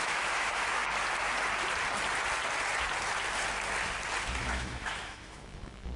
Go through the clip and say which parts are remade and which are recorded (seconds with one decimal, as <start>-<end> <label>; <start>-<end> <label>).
0.0-0.8 remade; 0.8-4.4 recorded; 4.4-6.0 remade